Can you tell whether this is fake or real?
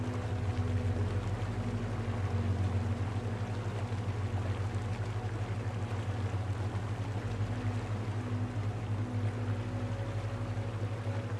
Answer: real